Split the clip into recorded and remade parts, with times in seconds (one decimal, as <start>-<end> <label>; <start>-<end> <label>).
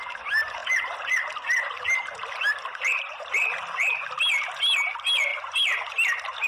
0.0-6.5 recorded